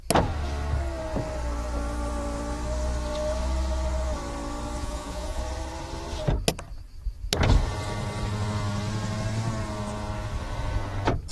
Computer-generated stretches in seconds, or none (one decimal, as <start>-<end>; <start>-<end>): 4.8-5.4